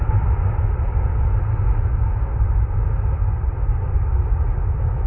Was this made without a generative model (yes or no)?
yes